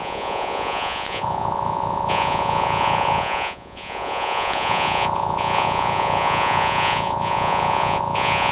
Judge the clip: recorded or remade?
remade